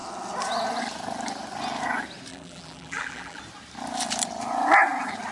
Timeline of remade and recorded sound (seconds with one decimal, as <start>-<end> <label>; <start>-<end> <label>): 0.0-2.3 recorded; 2.3-3.4 remade; 3.4-5.3 recorded